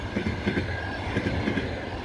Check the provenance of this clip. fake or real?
real